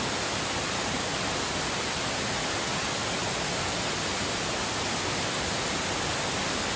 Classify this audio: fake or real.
real